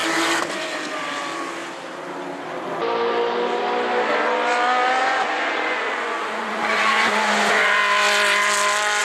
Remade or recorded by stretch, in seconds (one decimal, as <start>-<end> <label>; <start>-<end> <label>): 0.0-5.0 recorded; 5.0-7.8 remade; 7.8-9.0 recorded